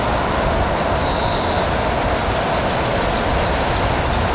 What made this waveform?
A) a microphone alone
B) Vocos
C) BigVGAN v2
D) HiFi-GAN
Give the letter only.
A